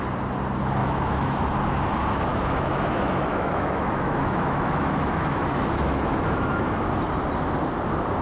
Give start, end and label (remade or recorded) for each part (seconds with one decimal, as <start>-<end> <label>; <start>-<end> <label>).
0.0-0.8 recorded; 0.8-1.4 remade; 1.4-2.3 recorded; 2.3-6.8 remade; 6.8-8.2 recorded